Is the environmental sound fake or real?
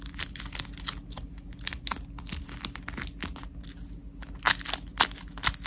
real